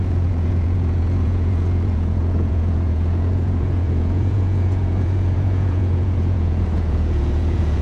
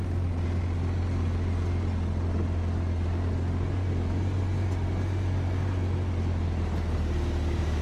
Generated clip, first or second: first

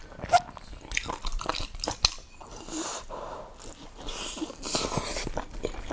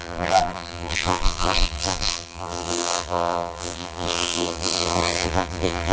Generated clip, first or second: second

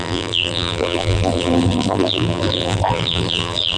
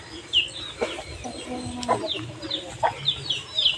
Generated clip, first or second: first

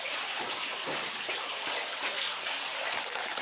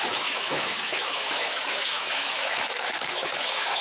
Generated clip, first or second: second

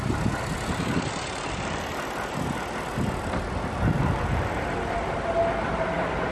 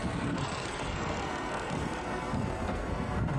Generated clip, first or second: second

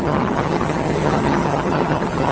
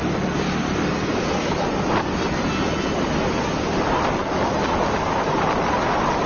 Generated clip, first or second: first